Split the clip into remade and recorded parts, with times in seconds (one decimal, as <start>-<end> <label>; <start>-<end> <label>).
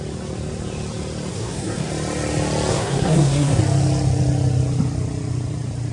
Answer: 0.0-1.3 recorded; 1.3-1.9 remade; 1.9-2.7 recorded; 2.7-3.6 remade; 3.6-5.9 recorded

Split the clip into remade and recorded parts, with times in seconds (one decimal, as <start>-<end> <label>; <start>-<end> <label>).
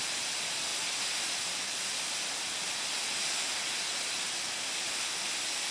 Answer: 0.0-5.7 recorded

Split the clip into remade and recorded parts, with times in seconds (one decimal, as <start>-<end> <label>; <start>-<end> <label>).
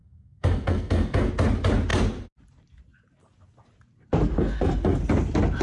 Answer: 0.0-1.3 remade; 1.3-4.3 recorded; 4.3-5.0 remade; 5.0-5.6 recorded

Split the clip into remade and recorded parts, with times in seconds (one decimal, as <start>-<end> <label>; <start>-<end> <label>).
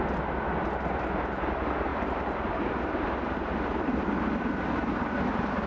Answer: 0.0-5.7 recorded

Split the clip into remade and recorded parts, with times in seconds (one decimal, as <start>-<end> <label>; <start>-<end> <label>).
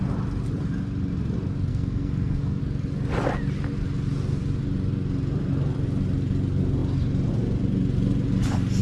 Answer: 0.0-1.7 recorded; 1.7-2.6 remade; 2.6-8.8 recorded